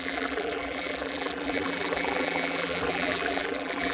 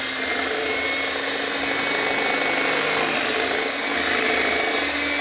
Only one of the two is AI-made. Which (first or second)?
first